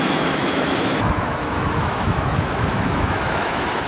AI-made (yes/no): yes